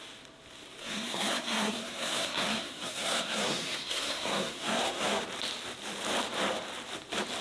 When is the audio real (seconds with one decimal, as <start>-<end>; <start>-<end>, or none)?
0.0-0.8; 5.2-7.4